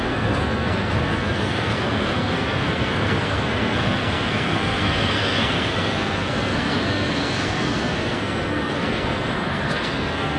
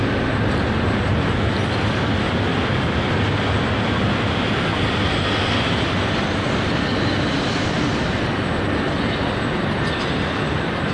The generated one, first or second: first